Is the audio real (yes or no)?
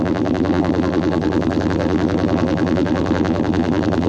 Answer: no